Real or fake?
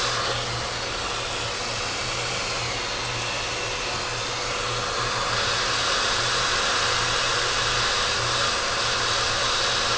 real